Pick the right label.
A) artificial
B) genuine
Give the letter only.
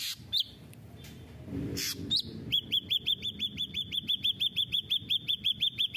A